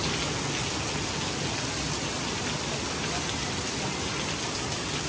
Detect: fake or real real